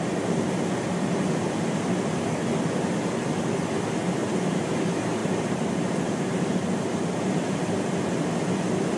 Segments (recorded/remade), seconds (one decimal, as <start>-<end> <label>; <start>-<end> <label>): 0.0-4.2 recorded; 4.2-4.8 remade; 4.8-5.2 recorded; 5.2-6.6 remade; 6.6-7.1 recorded; 7.1-7.6 remade; 7.6-9.0 recorded